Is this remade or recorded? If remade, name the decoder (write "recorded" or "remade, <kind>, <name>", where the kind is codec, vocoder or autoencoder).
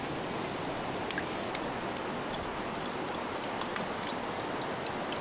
recorded